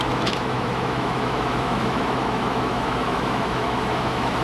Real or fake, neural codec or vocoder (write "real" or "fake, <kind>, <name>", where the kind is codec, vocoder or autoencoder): fake, autoencoder, DAC-VAE